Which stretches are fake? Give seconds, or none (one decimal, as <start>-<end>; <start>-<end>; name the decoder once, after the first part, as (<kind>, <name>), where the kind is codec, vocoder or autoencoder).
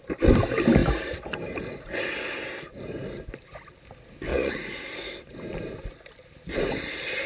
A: 4.3-4.8 (vocoder, Vocos)